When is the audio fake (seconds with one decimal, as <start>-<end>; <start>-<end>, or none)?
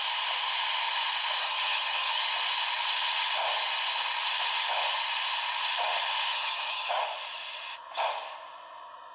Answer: 1.4-2.2; 6.3-6.9